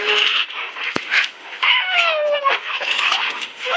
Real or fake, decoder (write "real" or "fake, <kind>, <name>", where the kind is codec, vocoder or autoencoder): fake, autoencoder, DAC-VAE